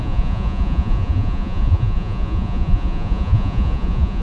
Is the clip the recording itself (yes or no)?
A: no